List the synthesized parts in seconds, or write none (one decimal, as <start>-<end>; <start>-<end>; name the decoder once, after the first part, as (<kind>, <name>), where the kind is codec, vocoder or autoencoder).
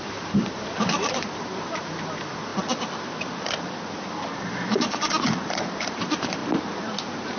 0.0-2.5 (vocoder, BigVGAN v2); 5.2-6.4